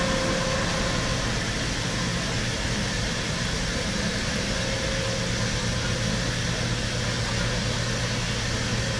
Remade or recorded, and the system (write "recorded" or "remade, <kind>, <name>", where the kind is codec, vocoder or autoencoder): recorded